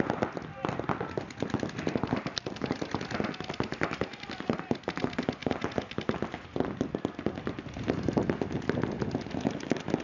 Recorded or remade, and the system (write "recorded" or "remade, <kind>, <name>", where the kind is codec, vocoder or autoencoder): recorded